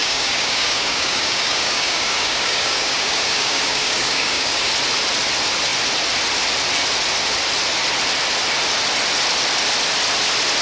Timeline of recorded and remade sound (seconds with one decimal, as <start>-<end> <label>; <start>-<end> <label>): 0.0-4.7 remade; 4.7-10.6 recorded